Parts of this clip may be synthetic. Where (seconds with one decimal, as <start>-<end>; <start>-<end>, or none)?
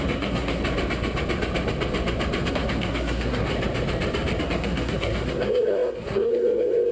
0.0-0.6; 2.5-3.5; 4.4-6.9